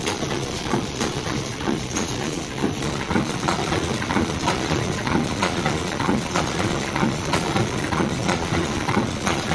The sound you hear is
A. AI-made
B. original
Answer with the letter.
A